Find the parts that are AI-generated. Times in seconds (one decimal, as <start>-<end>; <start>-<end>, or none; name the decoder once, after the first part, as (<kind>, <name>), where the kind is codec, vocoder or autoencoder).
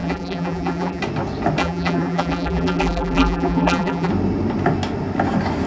0.0-1.0 (vocoder, BigVGAN v2); 1.6-4.1